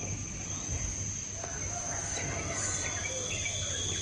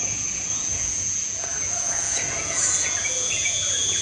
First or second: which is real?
first